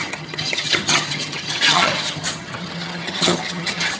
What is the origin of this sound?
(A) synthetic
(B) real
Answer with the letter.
A